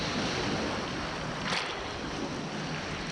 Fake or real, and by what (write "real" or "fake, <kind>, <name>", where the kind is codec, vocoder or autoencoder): real